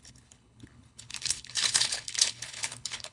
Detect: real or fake fake